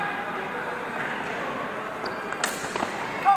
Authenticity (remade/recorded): recorded